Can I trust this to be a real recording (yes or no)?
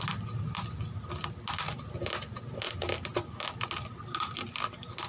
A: yes